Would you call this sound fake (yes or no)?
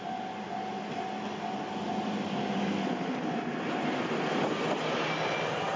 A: no